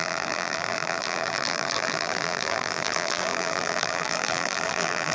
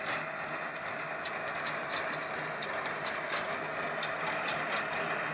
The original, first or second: second